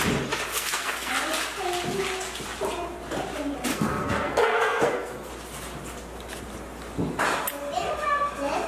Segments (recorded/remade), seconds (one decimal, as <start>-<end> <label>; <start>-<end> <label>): 0.0-0.5 recorded; 0.5-1.1 remade; 1.1-3.7 recorded; 3.7-5.3 remade; 5.3-8.7 recorded